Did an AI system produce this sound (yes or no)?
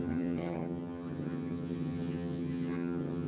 yes